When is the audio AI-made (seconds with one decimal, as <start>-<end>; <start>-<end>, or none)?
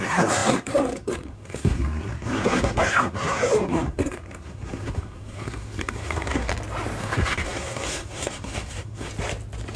0.0-6.5; 7.0-9.1